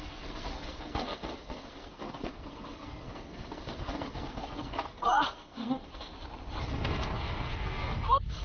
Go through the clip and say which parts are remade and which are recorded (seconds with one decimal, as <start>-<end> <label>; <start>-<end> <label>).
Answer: 0.0-6.1 remade; 6.1-6.7 recorded; 6.7-8.4 remade